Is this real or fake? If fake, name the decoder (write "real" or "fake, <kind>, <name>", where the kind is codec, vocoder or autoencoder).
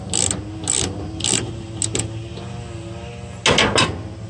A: real